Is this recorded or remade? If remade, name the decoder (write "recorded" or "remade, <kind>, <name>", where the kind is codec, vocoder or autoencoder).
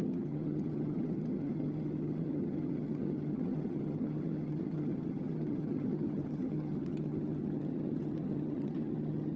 remade, vocoder, HiFi-GAN